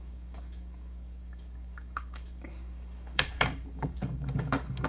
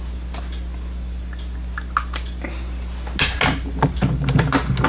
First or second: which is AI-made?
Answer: first